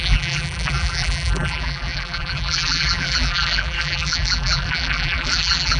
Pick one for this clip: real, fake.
fake